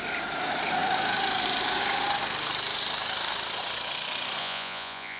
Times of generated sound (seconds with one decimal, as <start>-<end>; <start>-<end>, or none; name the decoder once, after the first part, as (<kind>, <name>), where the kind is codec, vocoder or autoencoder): 4.4-5.2 (vocoder, Vocos)